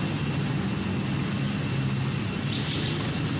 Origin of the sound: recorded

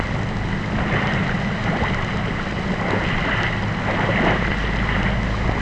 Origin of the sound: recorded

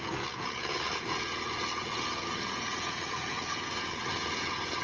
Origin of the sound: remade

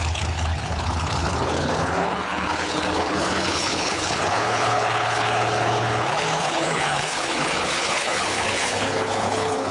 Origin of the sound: remade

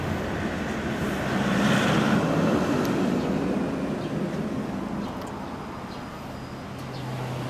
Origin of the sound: recorded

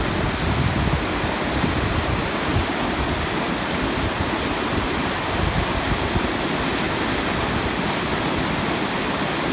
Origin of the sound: recorded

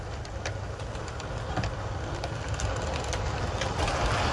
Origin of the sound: recorded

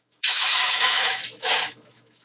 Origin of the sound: remade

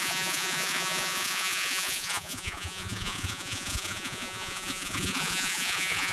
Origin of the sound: remade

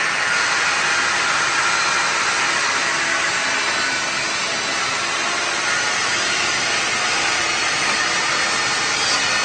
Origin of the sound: recorded